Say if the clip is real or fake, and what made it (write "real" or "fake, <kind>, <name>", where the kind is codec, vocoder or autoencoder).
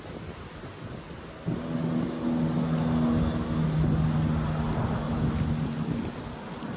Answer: real